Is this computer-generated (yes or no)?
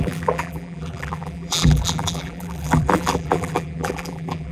yes